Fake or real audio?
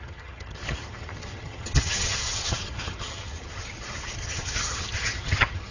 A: fake